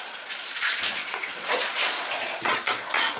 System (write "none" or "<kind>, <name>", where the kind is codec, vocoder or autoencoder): vocoder, Vocos